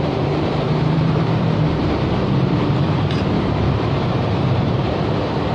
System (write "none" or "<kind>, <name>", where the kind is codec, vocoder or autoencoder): vocoder, BigVGAN v2